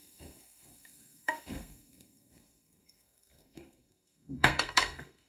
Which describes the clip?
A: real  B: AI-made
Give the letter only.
B